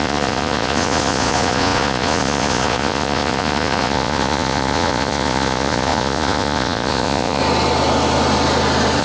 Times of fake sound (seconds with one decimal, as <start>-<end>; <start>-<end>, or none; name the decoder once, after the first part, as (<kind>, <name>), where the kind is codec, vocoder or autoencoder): 0.0-7.4 (vocoder, Vocos)